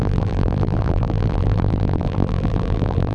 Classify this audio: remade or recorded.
remade